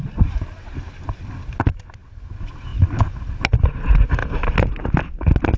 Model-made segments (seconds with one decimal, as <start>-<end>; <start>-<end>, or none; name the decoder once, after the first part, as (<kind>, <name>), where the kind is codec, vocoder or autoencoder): none